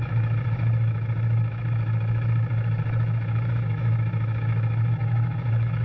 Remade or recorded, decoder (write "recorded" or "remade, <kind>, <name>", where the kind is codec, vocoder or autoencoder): remade, autoencoder, DAC-VAE